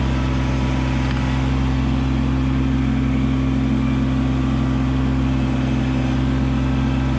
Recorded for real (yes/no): yes